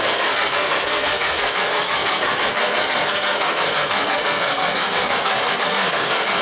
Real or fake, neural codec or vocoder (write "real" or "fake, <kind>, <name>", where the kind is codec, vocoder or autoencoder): fake, codec, SNAC